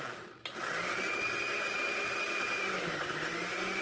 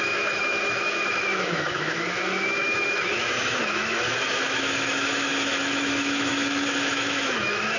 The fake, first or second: second